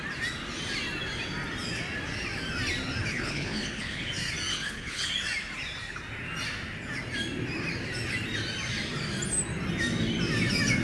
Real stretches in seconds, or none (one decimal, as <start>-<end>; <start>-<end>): 0.0-3.1; 4.1-4.5; 5.1-10.8